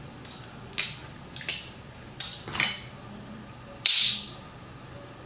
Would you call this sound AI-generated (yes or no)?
no